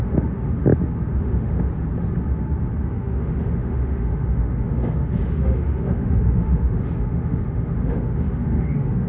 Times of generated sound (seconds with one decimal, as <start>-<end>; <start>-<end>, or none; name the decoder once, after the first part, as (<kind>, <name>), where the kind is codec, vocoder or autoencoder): 0.0-0.6 (autoencoder, DAC-VAE); 1.2-1.7; 2.9-9.1